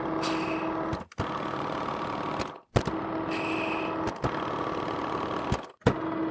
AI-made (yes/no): no